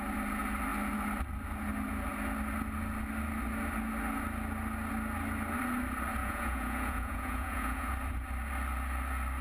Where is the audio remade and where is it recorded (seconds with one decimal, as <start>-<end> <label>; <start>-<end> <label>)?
0.0-6.2 recorded; 6.2-7.9 remade; 7.9-9.4 recorded